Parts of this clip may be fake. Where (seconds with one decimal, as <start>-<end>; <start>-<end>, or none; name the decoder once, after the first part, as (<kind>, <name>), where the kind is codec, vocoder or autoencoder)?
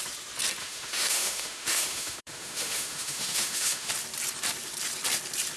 0.6-3.9 (autoencoder, DAC-VAE)